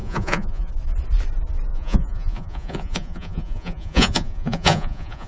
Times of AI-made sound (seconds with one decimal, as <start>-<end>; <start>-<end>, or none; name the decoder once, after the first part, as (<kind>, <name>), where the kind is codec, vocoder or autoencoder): 0.0-0.7 (vocoder, Vocos); 1.7-5.3